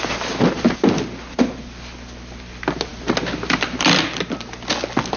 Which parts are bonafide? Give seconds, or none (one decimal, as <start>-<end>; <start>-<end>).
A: 0.0-5.2